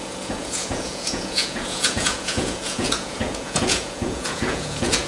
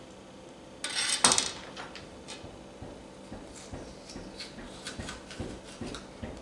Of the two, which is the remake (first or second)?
first